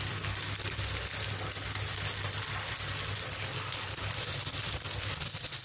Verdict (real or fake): real